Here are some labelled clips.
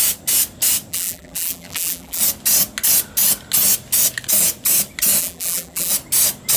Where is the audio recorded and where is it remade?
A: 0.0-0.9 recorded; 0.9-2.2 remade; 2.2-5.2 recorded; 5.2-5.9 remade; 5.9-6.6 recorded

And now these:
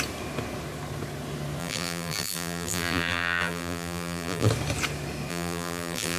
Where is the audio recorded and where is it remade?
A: 0.0-1.6 recorded; 1.6-4.5 remade; 4.5-5.3 recorded; 5.3-6.2 remade

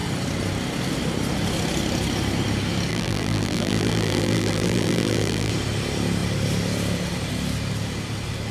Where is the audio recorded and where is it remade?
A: 0.0-2.9 recorded; 2.9-5.5 remade; 5.5-8.5 recorded

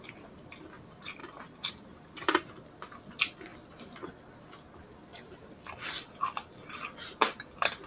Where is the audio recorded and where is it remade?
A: 0.0-1.2 recorded; 1.2-2.5 remade; 2.5-7.9 recorded